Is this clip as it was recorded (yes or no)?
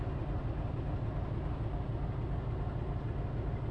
yes